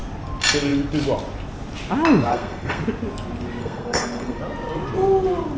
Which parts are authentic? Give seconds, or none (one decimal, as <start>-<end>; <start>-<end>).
0.0-2.3; 2.8-3.6; 4.4-5.6